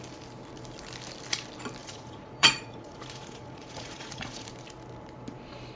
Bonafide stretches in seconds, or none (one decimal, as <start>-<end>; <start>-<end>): 0.0-1.8; 4.5-5.8